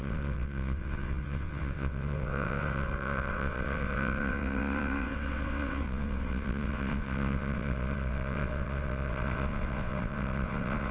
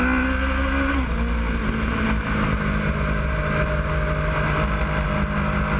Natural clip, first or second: second